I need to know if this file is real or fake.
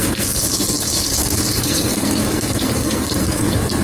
fake